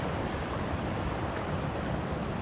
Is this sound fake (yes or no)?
no